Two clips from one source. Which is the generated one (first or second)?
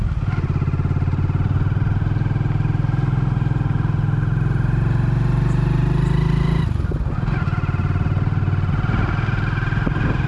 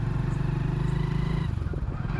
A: second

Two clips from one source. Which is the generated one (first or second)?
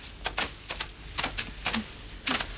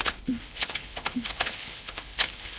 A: second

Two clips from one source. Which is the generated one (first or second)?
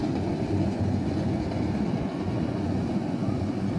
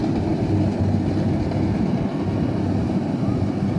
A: first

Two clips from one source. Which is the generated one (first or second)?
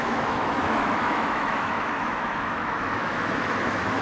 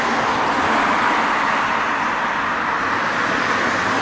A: first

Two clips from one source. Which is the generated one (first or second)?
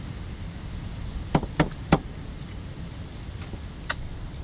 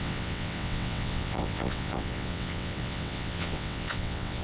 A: second